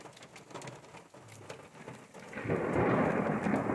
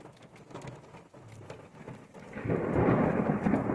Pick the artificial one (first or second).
second